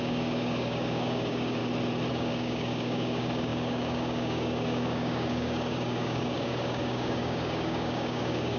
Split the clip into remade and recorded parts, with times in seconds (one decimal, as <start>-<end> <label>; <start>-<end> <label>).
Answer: 0.0-1.6 remade; 1.6-2.1 recorded; 2.1-8.6 remade